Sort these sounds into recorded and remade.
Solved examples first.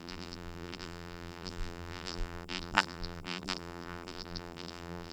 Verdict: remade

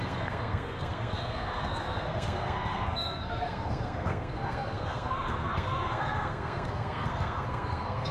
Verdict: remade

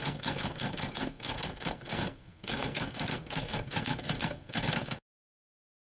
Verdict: remade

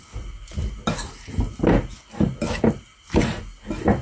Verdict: recorded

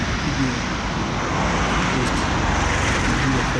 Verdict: recorded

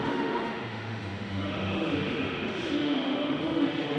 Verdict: remade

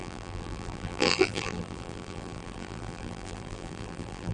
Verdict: remade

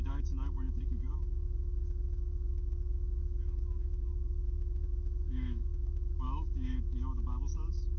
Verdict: remade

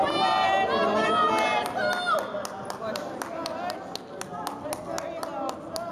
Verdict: recorded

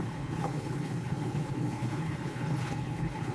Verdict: remade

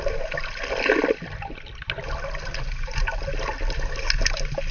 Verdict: recorded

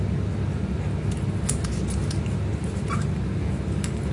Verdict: recorded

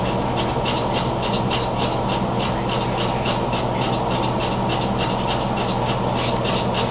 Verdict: recorded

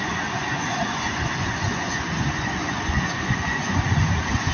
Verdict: remade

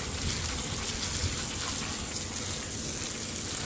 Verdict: recorded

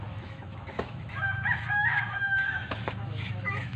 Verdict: remade